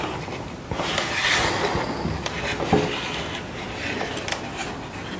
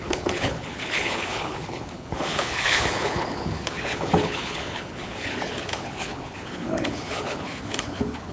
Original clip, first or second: first